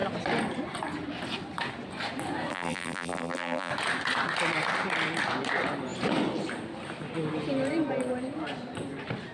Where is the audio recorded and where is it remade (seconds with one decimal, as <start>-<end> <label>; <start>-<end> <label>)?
0.0-2.5 recorded; 2.5-3.7 remade; 3.7-9.3 recorded